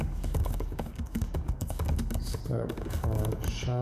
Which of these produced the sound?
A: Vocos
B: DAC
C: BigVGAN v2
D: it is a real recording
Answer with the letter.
B